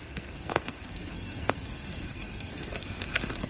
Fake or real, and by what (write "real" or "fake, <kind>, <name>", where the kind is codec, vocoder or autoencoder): fake, codec, SNAC